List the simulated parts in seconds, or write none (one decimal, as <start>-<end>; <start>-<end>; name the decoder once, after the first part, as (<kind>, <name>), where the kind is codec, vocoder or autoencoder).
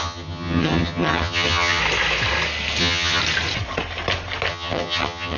0.0-1.8 (vocoder, HiFi-GAN); 2.8-3.2; 4.5-5.4